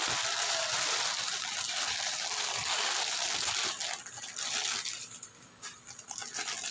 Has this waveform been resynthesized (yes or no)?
no